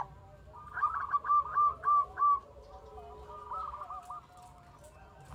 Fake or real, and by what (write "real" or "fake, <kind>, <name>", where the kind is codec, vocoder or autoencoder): real